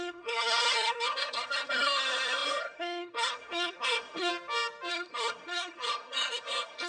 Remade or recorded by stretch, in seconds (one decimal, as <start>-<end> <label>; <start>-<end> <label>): 0.0-4.3 remade; 4.3-4.9 recorded; 4.9-6.9 remade